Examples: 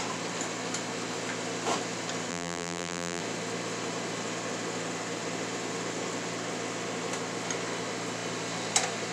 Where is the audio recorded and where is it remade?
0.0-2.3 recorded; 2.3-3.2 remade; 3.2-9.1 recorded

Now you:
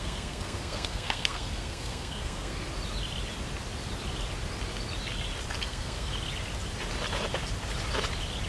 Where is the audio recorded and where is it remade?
0.0-2.6 remade; 2.6-5.6 recorded; 5.6-6.1 remade; 6.1-8.5 recorded

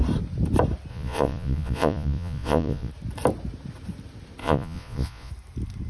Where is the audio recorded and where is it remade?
0.0-0.9 recorded; 0.9-2.9 remade; 2.9-4.4 recorded; 4.4-5.3 remade; 5.3-5.9 recorded